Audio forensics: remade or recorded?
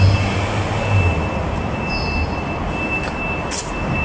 recorded